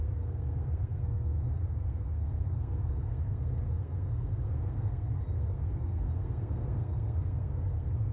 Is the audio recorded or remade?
remade